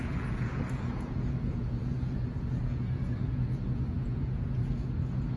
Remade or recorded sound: remade